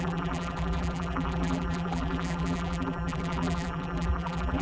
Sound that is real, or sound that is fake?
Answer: fake